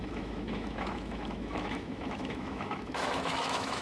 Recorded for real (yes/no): no